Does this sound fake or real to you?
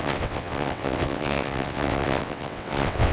fake